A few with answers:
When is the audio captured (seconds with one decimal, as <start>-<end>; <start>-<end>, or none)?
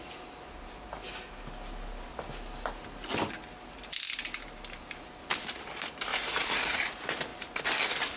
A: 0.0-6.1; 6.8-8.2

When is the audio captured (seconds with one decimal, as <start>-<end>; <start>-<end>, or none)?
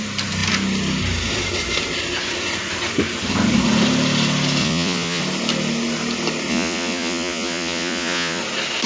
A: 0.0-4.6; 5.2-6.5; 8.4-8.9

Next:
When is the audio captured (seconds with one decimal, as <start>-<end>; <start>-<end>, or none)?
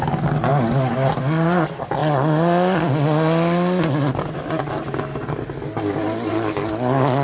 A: 0.0-7.2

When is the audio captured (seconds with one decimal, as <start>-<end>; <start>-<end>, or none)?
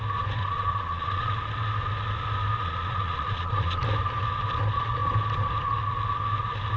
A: 0.0-0.4; 1.3-2.6; 3.8-6.8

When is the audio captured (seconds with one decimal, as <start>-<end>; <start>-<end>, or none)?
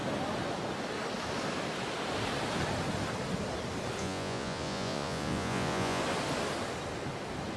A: 0.0-4.0; 6.0-7.6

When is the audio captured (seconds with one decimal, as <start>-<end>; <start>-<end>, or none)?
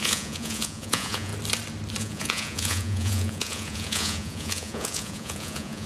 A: 1.3-2.0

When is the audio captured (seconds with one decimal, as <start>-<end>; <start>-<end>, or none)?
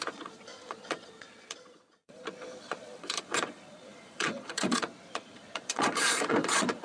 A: none